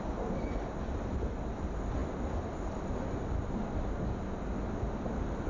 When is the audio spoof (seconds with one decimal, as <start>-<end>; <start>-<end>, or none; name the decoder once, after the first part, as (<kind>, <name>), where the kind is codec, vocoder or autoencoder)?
none